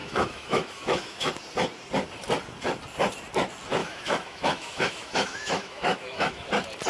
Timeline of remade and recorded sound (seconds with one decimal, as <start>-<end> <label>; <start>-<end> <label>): 0.0-1.3 remade; 1.3-3.8 recorded; 3.8-6.5 remade; 6.5-6.9 recorded